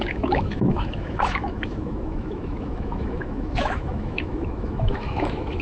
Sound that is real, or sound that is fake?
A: fake